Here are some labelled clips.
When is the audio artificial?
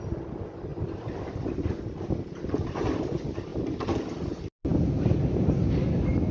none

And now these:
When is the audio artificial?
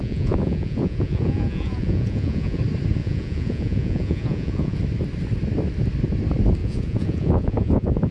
0.0-2.6 (vocoder, Vocos); 3.0-4.8; 6.6-8.1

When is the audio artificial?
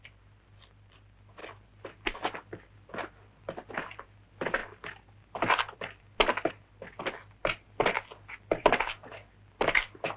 none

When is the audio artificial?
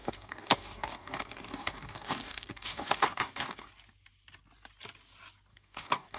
0.0-3.7 (codec, DAC); 5.5-6.2